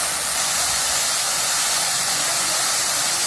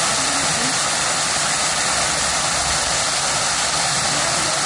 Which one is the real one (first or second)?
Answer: second